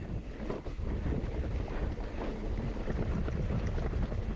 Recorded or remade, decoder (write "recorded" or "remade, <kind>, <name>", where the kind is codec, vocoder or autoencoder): remade, vocoder, BigVGAN v2